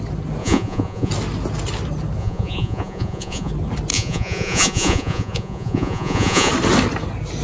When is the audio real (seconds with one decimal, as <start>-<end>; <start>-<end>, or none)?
0.0-0.4; 1.1-2.2; 3.5-3.9; 6.5-7.4